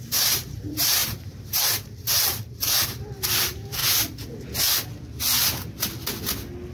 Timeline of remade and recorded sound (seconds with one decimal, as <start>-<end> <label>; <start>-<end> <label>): 0.0-3.8 remade; 3.8-6.7 recorded